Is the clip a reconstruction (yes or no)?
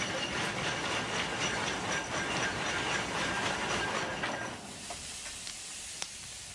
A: no